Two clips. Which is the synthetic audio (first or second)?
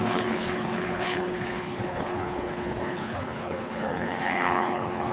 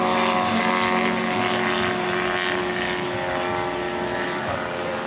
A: first